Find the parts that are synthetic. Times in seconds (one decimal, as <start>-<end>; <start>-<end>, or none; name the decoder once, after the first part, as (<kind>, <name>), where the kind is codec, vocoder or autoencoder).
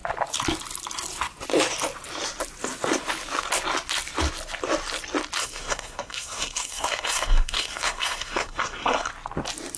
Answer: 5.4-9.1 (codec, SNAC)